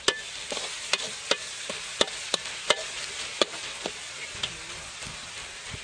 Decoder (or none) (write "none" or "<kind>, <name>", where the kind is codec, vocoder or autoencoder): none